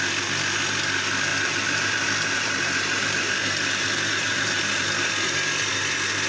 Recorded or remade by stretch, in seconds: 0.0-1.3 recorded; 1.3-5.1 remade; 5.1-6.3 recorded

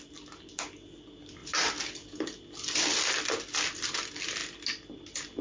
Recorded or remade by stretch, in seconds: 0.0-5.4 recorded